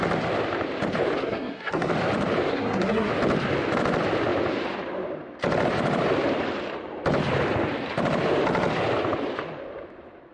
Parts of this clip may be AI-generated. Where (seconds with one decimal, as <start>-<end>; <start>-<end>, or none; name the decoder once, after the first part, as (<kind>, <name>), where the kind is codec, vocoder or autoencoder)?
1.2-1.9 (codec, SNAC); 2.5-3.1